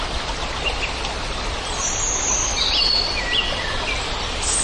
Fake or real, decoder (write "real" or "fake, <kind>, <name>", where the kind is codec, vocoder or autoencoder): real